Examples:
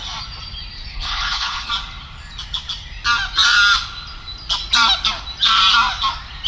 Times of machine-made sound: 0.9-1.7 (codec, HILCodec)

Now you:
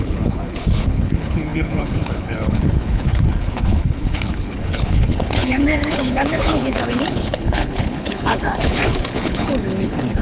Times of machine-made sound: 0.0-10.2 (codec, HILCodec)